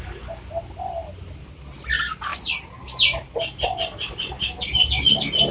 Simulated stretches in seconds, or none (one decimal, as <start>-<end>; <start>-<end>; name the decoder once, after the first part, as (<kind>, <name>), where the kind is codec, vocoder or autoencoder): none